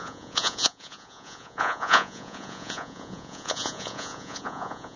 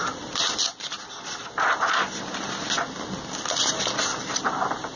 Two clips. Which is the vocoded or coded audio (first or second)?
first